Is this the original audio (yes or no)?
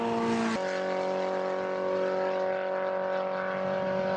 yes